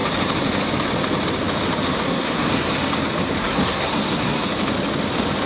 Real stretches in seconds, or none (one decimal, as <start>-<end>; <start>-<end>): 0.0-1.9; 2.7-3.4; 4.5-5.5